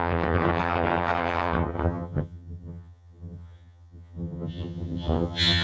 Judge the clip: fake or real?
fake